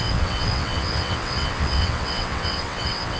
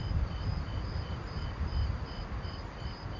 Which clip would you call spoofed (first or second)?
first